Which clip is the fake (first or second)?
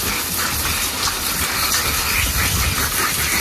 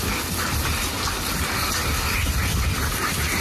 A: second